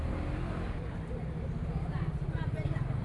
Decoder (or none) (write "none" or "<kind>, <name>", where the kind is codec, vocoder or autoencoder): none